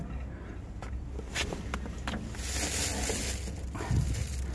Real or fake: real